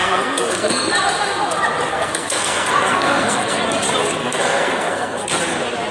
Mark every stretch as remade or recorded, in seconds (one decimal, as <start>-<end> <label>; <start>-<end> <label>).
0.0-0.9 remade; 0.9-1.9 recorded; 1.9-3.6 remade; 3.6-4.2 recorded; 4.2-5.4 remade; 5.4-5.9 recorded